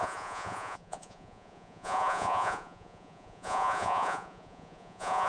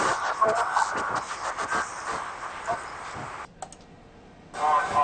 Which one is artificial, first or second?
first